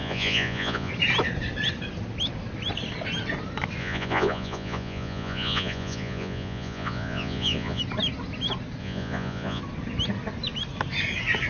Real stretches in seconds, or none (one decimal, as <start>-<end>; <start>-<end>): 0.9-3.8; 7.8-8.8; 9.6-11.5